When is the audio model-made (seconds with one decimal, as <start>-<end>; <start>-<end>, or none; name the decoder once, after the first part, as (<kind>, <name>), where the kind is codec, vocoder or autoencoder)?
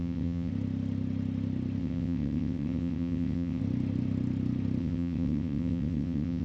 0.0-0.5 (vocoder, WaveNeXt); 1.8-3.6; 4.8-6.4